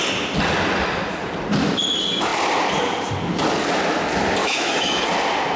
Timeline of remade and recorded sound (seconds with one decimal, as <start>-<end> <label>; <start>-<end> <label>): 0.0-4.4 recorded; 4.4-5.0 remade; 5.0-5.6 recorded